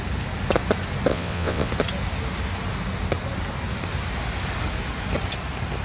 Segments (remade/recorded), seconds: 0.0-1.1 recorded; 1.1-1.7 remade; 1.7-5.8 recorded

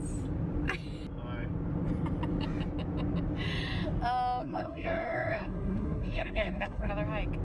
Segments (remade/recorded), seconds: 0.0-4.4 recorded; 4.4-6.9 remade; 6.9-7.4 recorded

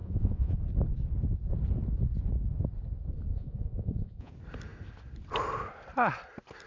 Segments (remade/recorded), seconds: 0.0-0.6 remade; 0.6-3.3 recorded; 3.3-4.3 remade; 4.3-6.7 recorded

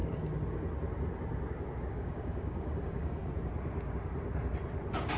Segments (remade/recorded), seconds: 0.0-1.9 recorded; 1.9-3.2 remade; 3.2-5.2 recorded